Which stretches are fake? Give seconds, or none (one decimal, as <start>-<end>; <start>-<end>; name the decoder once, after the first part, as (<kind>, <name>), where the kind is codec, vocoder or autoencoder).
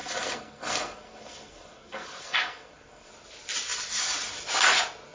0.0-3.1 (codec, SNAC)